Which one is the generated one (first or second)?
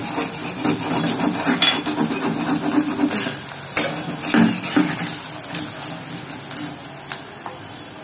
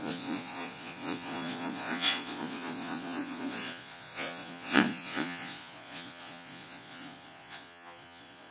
second